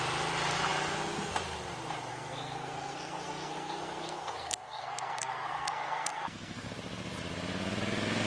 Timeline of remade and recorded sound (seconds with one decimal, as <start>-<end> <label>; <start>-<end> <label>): 0.0-2.1 recorded; 2.1-6.7 remade; 6.7-8.3 recorded